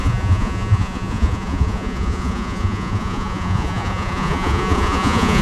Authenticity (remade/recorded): remade